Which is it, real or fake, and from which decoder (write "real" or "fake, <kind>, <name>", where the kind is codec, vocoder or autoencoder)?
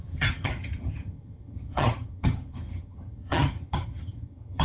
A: fake, vocoder, HiFi-GAN